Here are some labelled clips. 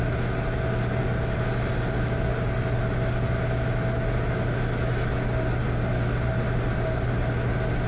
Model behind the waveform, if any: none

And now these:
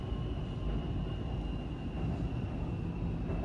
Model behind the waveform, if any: none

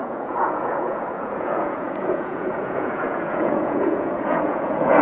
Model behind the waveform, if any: vocoder, Vocos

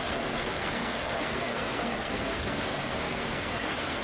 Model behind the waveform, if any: codec, SNAC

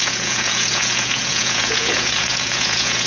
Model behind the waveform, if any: vocoder, Vocos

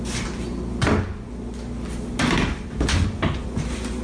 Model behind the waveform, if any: none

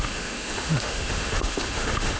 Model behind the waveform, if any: autoencoder, DAC-VAE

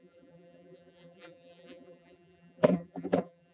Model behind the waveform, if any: vocoder, BigVGAN v2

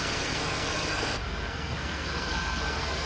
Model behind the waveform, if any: codec, SNAC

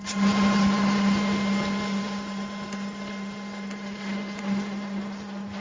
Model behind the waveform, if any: none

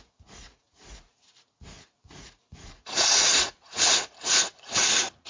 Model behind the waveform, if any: vocoder, Vocos